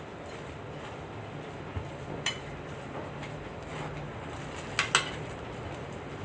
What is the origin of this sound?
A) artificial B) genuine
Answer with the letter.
B